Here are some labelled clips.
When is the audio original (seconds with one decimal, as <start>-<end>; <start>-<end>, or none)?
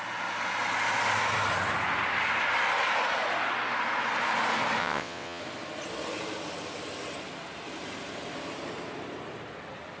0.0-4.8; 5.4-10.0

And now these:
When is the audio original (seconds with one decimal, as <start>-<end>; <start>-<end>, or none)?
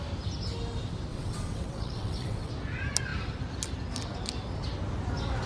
0.0-1.1; 2.5-5.5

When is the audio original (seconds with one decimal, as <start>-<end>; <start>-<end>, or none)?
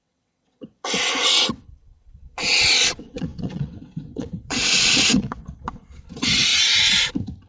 6.5-7.5